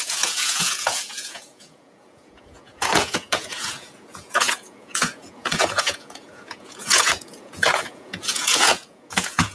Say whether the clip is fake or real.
fake